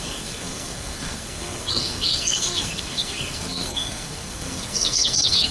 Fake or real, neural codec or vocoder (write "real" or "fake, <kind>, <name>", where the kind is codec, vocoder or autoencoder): fake, codec, SNAC